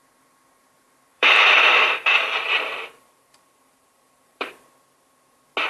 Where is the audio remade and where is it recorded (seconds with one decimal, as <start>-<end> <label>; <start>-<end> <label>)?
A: 0.0-1.1 recorded; 1.1-4.5 remade; 4.5-5.7 recorded